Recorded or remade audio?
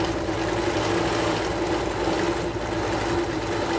recorded